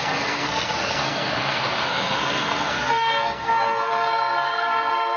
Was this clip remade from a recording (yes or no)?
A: yes